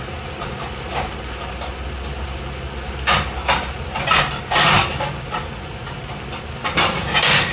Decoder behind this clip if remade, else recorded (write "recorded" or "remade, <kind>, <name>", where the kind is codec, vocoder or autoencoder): recorded